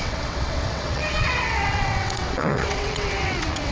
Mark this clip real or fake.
fake